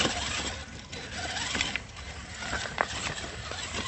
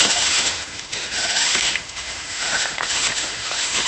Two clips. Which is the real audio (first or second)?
first